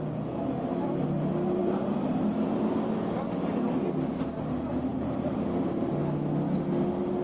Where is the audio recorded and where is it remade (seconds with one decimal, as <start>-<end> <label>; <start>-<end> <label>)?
0.0-1.6 recorded; 1.6-2.4 remade; 2.4-4.9 recorded; 4.9-5.9 remade; 5.9-7.2 recorded